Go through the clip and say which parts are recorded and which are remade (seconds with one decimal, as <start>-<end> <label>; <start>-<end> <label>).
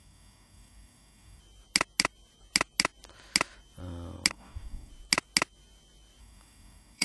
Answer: 0.0-1.4 remade; 1.4-4.3 recorded; 4.3-4.9 remade; 4.9-6.2 recorded; 6.2-7.0 remade